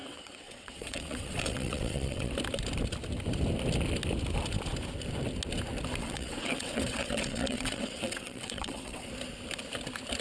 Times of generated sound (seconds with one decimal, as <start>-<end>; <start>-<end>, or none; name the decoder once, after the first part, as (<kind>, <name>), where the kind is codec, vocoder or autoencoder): 0.0-2.3 (vocoder, WaveNeXt); 6.0-9.1